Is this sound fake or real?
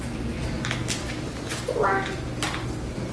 real